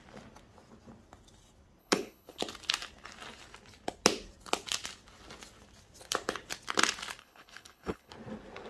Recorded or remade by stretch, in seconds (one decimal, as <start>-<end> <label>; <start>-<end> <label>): 0.0-1.8 recorded; 1.8-2.4 remade; 2.4-7.2 recorded; 7.2-8.1 remade; 8.1-8.7 recorded